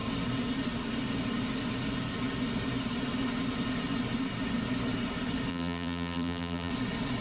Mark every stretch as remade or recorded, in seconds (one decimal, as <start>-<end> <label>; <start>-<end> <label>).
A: 0.0-5.5 recorded; 5.5-6.7 remade; 6.7-7.2 recorded